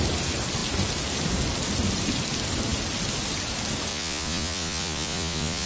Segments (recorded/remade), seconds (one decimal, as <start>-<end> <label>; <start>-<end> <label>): 0.0-3.9 recorded; 3.9-5.7 remade